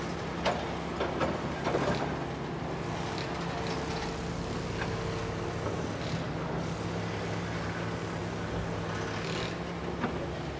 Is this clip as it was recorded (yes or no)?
yes